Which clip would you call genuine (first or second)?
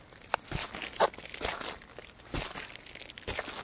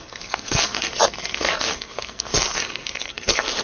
first